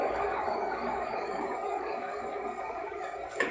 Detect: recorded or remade remade